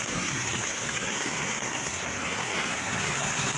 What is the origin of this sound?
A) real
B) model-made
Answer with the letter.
B